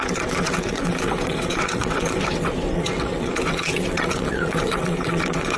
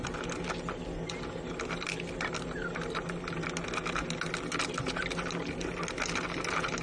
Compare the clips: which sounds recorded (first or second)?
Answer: second